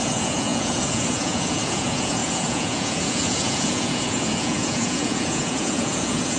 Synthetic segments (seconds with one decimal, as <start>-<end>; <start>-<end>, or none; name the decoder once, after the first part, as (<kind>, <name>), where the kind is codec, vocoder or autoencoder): 0.0-6.4 (vocoder, Vocos)